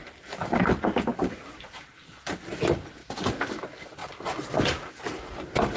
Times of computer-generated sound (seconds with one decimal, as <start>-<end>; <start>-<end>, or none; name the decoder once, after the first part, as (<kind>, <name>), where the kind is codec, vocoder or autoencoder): none